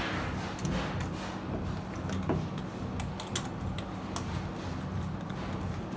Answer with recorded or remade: recorded